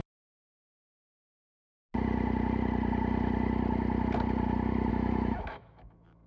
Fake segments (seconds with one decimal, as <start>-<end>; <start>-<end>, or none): 0.0-1.3; 4.9-6.3